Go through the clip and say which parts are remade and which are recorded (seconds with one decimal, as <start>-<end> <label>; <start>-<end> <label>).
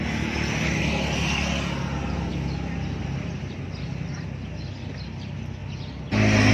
0.0-6.5 recorded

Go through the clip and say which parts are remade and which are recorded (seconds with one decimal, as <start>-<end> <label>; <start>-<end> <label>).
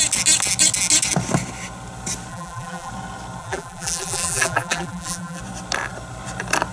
0.0-2.3 recorded; 2.3-2.9 remade; 2.9-3.4 recorded; 3.4-5.4 remade; 5.4-6.7 recorded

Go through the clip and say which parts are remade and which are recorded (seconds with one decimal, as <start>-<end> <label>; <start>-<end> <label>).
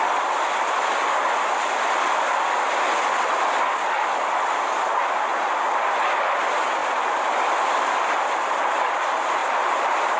0.0-6.8 recorded; 6.8-7.4 remade; 7.4-10.2 recorded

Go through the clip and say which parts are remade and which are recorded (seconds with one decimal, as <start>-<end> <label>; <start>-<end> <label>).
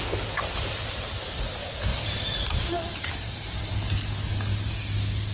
0.0-1.9 recorded; 1.9-3.7 remade; 3.7-5.3 recorded